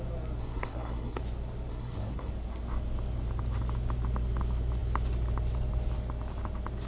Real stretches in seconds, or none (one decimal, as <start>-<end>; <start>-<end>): 0.0-0.4; 1.2-1.7; 2.3-6.9